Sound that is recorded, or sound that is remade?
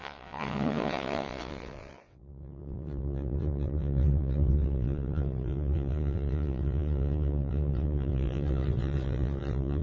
remade